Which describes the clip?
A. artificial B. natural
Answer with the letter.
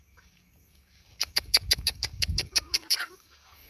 A